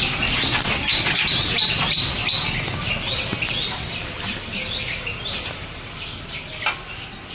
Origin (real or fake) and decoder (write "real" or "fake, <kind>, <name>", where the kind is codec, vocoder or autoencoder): real